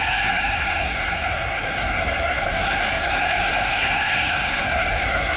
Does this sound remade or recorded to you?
remade